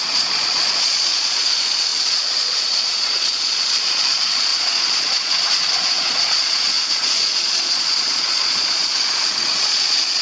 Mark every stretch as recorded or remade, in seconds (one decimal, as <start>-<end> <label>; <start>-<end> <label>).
0.0-10.2 remade